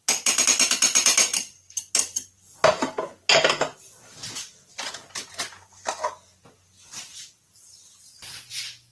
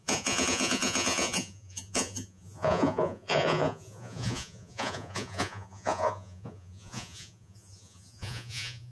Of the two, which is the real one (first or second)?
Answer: first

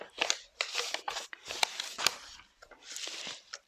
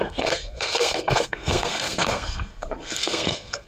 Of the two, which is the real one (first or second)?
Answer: first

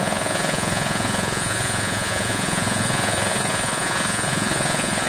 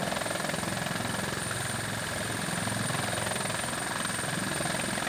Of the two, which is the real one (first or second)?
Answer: second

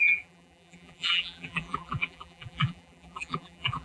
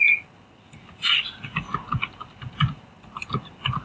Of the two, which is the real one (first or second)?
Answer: second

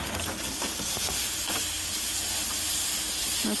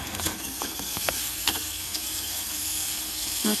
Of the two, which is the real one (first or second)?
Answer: first